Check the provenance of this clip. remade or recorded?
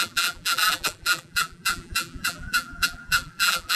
remade